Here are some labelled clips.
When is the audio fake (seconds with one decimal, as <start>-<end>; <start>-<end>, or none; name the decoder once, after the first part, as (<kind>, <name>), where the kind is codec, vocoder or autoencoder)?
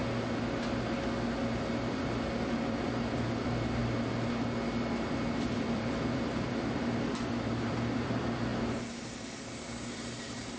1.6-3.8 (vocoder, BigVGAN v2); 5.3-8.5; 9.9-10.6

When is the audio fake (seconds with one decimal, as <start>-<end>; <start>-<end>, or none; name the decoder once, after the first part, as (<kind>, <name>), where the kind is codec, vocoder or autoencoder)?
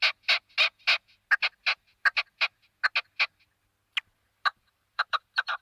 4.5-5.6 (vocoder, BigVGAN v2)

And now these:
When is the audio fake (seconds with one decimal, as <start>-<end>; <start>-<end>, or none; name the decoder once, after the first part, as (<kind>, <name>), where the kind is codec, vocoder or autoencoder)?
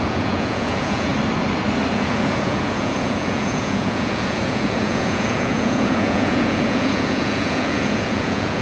0.0-1.1 (vocoder, Vocos); 1.9-8.6